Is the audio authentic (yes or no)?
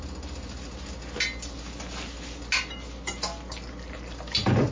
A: yes